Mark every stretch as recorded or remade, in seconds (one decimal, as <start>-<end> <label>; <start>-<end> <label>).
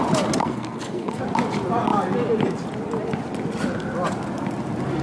0.0-0.4 recorded; 0.4-1.2 remade; 1.2-5.0 recorded